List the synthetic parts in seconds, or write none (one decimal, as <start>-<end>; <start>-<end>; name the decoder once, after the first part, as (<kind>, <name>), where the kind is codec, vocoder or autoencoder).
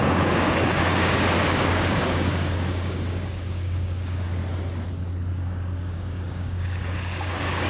0.0-4.4 (codec, DAC); 5.3-7.7